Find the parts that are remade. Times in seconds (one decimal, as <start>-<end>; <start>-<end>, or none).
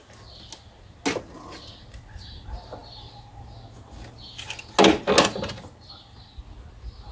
none